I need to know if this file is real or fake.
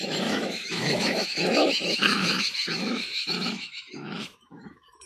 fake